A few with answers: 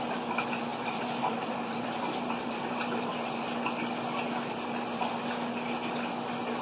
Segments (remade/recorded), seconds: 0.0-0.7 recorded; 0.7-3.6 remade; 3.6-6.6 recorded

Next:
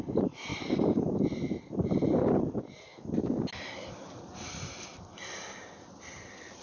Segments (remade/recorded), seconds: 0.0-0.5 recorded; 0.5-1.1 remade; 1.1-6.6 recorded

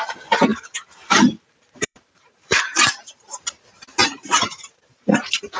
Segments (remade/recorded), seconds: 0.0-0.5 recorded; 0.5-3.4 remade; 3.4-4.0 recorded; 4.0-5.6 remade

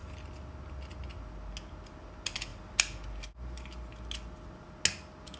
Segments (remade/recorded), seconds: 0.0-5.4 recorded